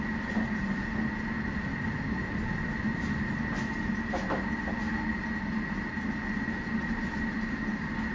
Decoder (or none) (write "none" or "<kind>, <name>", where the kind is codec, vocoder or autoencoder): none